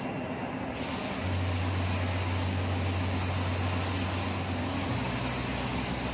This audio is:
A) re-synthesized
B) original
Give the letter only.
B